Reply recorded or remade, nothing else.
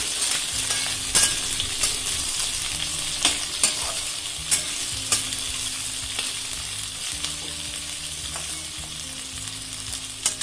recorded